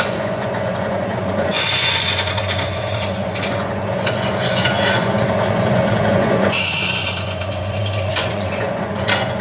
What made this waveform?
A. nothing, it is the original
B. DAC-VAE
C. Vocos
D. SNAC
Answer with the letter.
C